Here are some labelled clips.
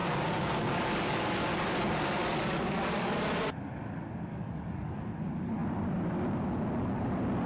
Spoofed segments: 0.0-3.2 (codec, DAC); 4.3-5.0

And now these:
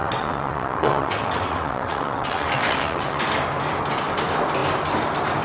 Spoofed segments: 0.0-3.2 (vocoder, WaveNeXt)

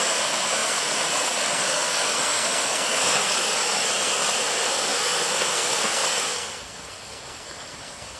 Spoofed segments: 0.0-8.2 (codec, SNAC)

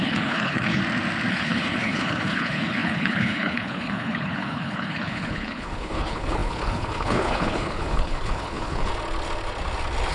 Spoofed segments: 0.0-0.8 (codec, HILCodec); 1.3-8.9

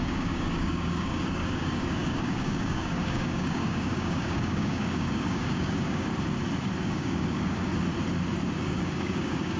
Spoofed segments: 0.0-6.1 (codec, DAC); 6.8-7.7; 8.6-9.6

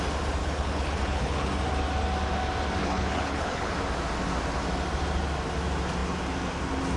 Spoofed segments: 0.4-1.5 (codec, HILCodec); 2.8-3.7